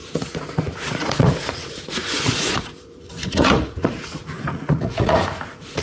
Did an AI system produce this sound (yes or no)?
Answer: yes